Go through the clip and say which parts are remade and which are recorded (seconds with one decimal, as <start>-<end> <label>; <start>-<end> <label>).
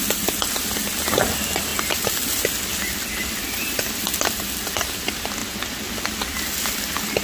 0.0-7.2 recorded